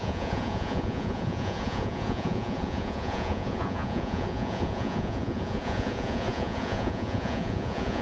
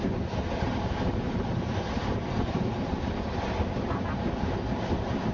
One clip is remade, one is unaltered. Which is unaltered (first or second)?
second